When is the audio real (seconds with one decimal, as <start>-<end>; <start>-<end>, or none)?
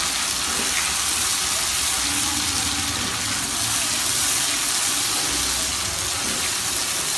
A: 0.0-7.2